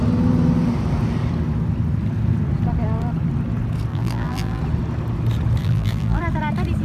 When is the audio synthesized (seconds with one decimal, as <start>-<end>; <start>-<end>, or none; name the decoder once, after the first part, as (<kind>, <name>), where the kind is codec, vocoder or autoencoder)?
3.9-4.6 (vocoder, BigVGAN v2); 5.6-6.2

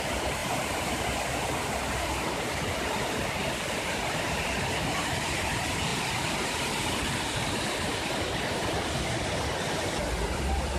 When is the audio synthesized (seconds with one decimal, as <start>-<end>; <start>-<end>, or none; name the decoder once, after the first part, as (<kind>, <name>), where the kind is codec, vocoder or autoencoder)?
0.4-1.0 (vocoder, BigVGAN v2)